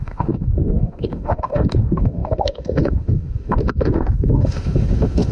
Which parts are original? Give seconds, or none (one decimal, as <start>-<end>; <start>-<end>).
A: none